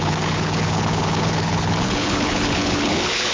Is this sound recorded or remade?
remade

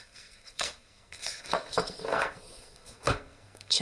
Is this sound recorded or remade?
remade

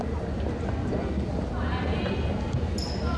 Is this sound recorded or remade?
recorded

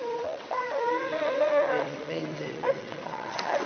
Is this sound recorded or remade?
remade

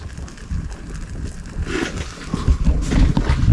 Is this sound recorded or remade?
recorded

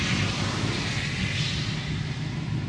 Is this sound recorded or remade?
recorded